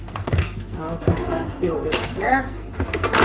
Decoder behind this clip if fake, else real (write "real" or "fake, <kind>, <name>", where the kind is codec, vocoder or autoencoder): fake, codec, SNAC